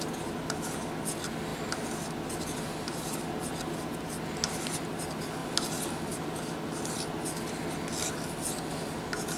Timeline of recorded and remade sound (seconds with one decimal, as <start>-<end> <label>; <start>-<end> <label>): 0.0-9.4 recorded